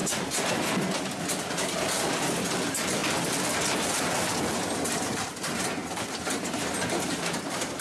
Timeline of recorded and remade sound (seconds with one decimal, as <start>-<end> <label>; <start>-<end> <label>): 0.0-0.8 recorded; 0.8-3.0 remade; 3.0-3.8 recorded; 3.8-5.8 remade; 5.8-6.7 recorded; 6.7-7.8 remade